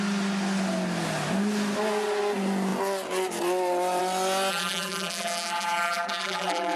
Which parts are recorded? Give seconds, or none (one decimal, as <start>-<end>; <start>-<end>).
0.0-4.5